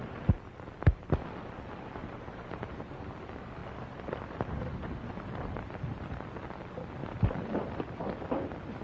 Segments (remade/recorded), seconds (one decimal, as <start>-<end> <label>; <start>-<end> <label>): 0.0-2.0 recorded; 2.0-3.1 remade; 3.1-7.0 recorded; 7.0-7.8 remade; 7.8-8.8 recorded